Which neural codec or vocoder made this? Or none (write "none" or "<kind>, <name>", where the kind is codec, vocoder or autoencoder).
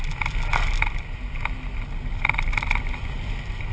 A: none